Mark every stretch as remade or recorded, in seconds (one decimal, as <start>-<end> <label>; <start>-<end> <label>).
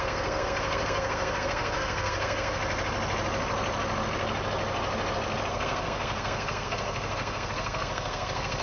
0.0-2.6 remade; 2.6-5.5 recorded; 5.5-8.6 remade